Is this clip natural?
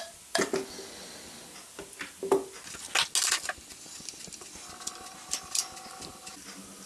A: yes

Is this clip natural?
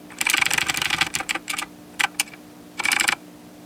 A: no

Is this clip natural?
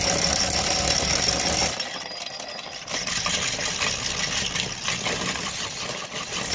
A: yes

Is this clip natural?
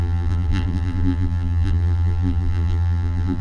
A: no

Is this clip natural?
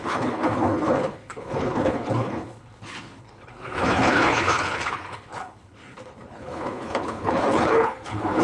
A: no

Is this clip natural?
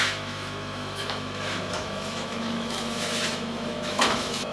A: no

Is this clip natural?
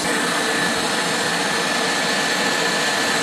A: yes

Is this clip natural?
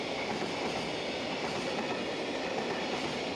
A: yes